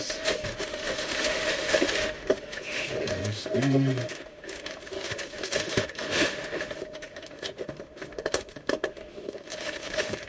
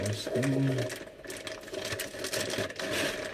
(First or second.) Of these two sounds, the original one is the second